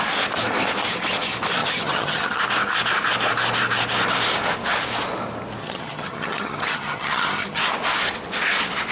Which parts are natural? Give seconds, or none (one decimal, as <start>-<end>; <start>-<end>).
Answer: 0.0-1.6; 2.4-5.6; 7.6-8.9